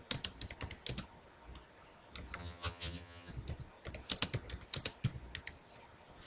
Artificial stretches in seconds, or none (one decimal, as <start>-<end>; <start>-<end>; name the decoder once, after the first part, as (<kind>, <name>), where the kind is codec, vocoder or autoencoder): 2.4-3.3 (vocoder, HiFi-GAN)